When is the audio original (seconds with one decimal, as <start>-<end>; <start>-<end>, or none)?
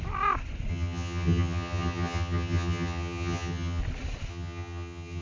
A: 0.0-0.7; 3.8-4.3